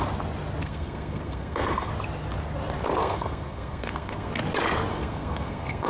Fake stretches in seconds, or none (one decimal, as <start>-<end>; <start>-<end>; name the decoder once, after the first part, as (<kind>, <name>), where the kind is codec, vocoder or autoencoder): 0.6-1.9 (codec, SNAC); 3.0-4.3; 4.9-5.9